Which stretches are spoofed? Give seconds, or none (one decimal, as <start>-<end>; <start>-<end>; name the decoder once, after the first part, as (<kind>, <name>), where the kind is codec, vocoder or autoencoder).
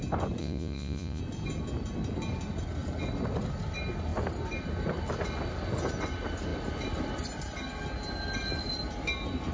0.4-1.2 (vocoder, Vocos)